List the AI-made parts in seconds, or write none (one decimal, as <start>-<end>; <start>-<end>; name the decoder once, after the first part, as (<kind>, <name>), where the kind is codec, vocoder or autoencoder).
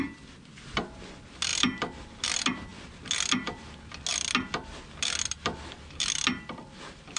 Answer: none